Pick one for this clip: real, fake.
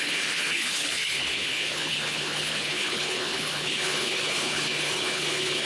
fake